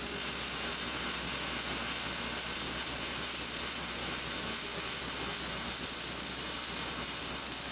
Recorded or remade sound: recorded